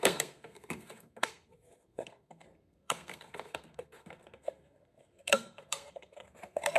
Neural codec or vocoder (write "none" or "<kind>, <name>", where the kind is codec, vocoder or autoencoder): codec, SNAC